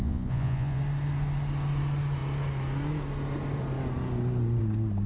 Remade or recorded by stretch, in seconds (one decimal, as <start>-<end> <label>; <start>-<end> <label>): 0.0-0.8 remade; 0.8-5.1 recorded